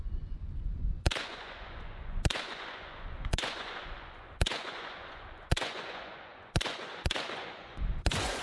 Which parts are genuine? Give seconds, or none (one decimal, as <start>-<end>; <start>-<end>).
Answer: none